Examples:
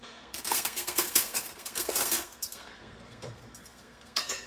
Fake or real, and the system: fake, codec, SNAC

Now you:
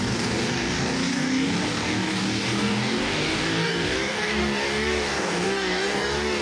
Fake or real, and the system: fake, codec, DAC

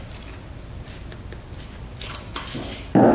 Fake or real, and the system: real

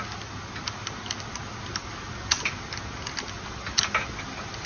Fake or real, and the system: real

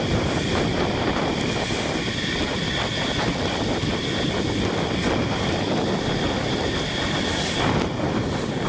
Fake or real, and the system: real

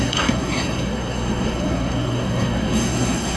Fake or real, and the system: fake, codec, SNAC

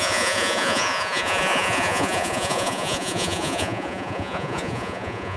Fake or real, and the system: fake, vocoder, Vocos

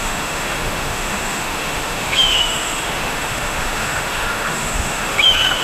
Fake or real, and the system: fake, autoencoder, DAC-VAE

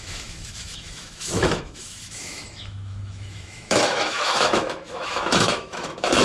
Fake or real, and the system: fake, autoencoder, DAC-VAE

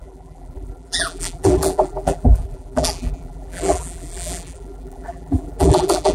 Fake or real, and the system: fake, vocoder, BigVGAN v2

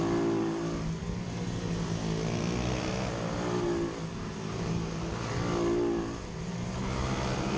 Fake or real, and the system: real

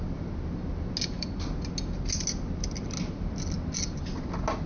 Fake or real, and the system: real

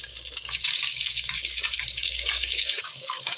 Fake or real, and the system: fake, codec, DAC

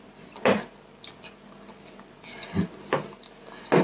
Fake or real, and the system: real